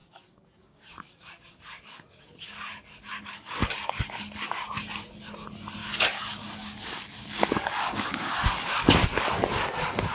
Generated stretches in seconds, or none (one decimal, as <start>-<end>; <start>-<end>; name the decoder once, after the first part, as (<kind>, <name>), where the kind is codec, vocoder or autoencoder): 0.0-4.6 (codec, DAC); 5.8-9.3